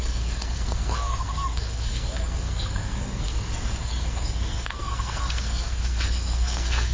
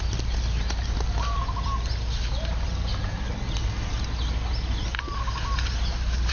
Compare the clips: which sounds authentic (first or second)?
second